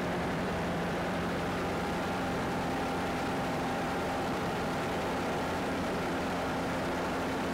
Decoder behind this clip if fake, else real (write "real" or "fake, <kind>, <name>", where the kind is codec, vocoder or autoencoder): fake, vocoder, BigVGAN v2